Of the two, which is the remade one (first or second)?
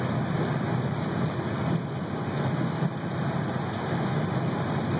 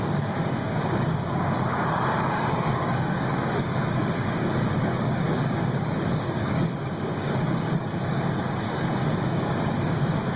second